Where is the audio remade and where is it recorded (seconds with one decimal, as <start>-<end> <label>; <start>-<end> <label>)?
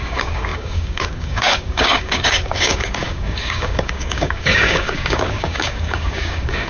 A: 0.0-6.7 remade